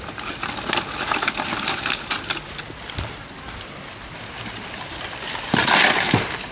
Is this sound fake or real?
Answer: real